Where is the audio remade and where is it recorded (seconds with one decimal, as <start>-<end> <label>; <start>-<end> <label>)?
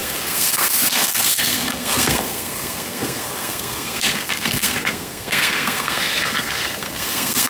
0.0-7.5 remade